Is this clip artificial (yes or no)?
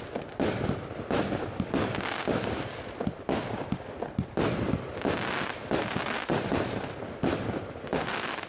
no